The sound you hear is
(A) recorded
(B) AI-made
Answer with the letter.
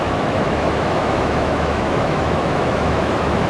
B